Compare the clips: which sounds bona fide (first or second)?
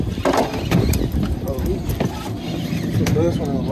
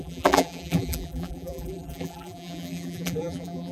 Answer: first